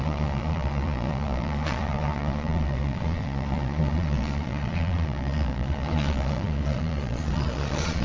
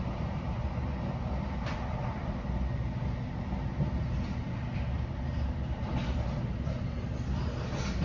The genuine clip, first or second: second